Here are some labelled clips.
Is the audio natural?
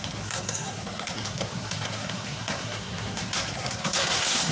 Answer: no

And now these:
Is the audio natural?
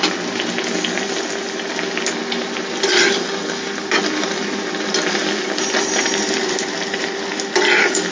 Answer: yes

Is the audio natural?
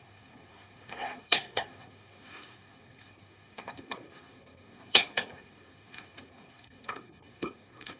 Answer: no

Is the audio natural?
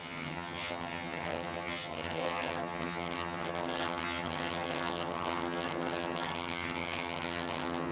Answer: no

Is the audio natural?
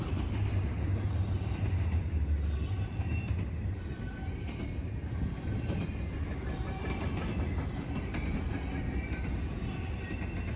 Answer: yes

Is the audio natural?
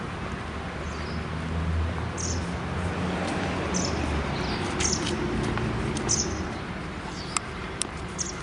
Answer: yes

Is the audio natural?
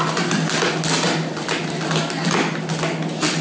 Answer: yes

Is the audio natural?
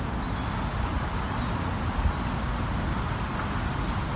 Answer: yes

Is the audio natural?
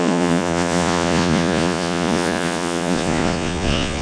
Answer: no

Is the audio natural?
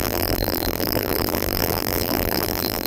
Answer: no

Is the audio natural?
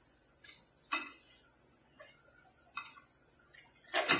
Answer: no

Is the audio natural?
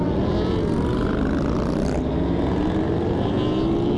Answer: yes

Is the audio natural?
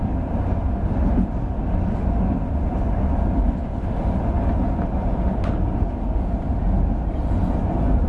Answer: yes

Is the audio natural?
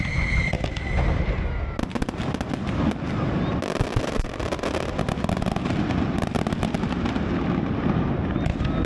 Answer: yes